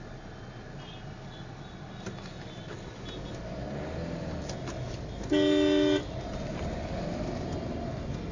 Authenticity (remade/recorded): recorded